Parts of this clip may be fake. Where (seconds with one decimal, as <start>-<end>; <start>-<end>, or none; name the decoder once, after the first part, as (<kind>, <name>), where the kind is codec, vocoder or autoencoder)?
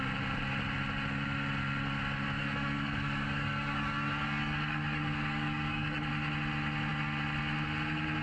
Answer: 2.4-6.1 (codec, DAC)